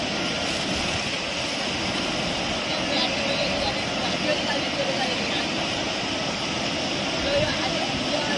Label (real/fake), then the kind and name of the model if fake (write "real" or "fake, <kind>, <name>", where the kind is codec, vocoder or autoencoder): real